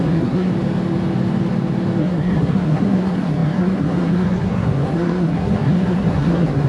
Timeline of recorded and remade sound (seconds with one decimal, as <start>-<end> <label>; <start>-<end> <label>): 0.0-0.5 remade; 0.5-2.0 recorded; 2.0-6.7 remade